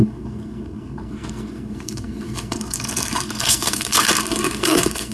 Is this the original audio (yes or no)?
no